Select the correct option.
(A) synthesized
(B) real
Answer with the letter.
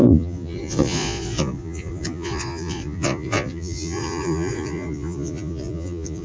A